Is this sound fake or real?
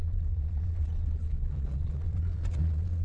fake